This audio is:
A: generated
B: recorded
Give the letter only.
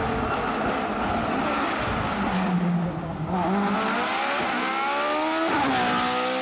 B